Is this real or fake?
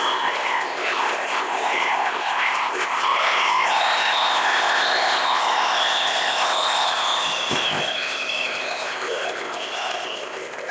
fake